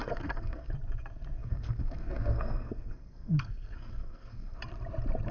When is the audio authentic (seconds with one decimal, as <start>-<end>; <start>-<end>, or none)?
0.7-1.4; 4.6-5.3